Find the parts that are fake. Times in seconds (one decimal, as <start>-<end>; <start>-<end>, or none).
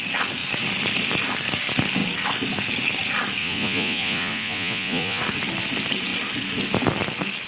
3.4-5.2